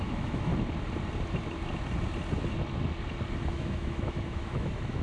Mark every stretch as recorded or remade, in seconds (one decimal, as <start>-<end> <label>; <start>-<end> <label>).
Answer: 0.0-0.5 remade; 0.5-3.5 recorded; 3.5-5.0 remade

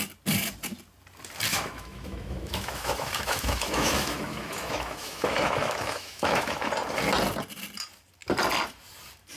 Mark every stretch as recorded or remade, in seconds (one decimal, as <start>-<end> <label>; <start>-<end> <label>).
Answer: 0.0-1.5 recorded; 1.5-6.7 remade; 6.7-9.4 recorded

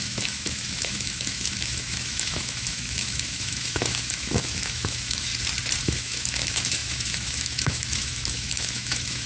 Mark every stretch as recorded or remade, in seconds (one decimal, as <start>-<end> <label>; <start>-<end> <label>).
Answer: 0.0-5.3 remade; 5.3-5.8 recorded; 5.8-9.3 remade